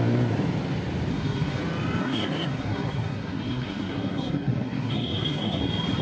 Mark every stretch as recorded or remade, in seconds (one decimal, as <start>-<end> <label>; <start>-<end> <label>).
0.0-1.1 recorded; 1.1-1.6 remade; 1.6-2.0 recorded; 2.0-5.6 remade; 5.6-6.0 recorded